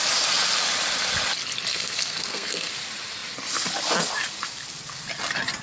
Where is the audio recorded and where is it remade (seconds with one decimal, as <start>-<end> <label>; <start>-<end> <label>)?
0.0-1.7 recorded; 1.7-2.7 remade; 2.7-5.6 recorded